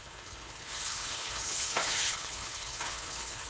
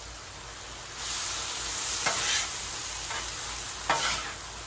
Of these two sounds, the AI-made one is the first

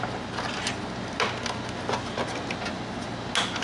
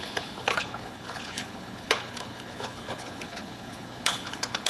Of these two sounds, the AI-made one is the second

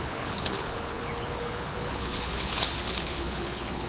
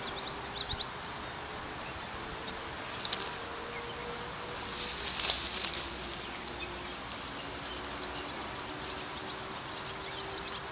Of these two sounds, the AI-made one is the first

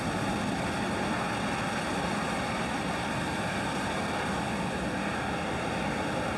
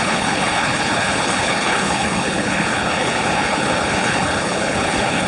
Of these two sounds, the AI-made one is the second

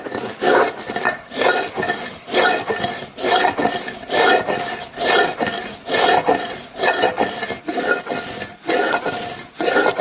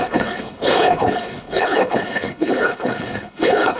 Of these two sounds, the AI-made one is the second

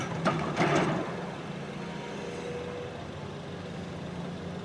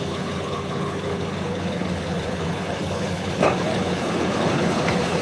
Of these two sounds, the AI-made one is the second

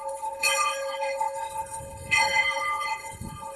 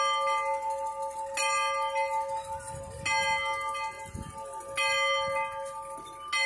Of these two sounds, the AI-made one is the first